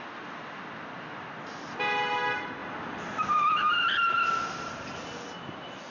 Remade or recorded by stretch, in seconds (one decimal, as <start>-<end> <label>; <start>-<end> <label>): 0.0-5.9 recorded